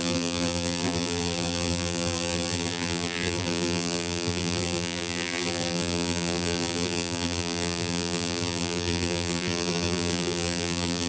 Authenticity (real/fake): fake